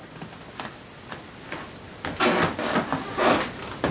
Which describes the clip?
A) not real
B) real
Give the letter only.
B